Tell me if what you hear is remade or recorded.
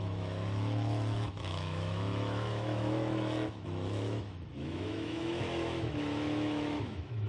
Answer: remade